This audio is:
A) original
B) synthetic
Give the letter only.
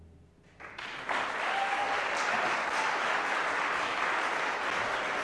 A